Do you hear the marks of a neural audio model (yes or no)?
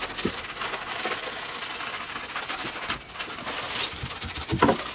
no